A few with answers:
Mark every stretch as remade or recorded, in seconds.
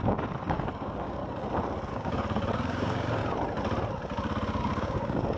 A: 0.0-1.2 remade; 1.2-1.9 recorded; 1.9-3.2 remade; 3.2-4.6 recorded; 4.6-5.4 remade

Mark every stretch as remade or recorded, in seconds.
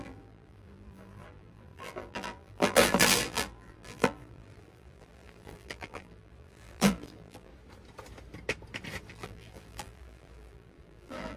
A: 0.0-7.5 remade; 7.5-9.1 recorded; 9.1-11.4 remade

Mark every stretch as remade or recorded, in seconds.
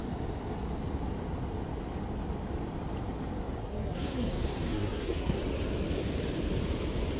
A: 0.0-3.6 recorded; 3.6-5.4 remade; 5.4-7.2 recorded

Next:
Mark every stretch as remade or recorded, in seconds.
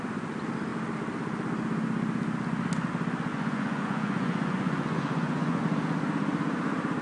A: 0.0-3.3 recorded; 3.3-5.6 remade; 5.6-7.0 recorded